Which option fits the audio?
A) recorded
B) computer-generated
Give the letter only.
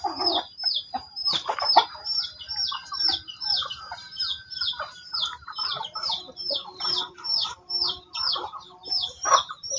B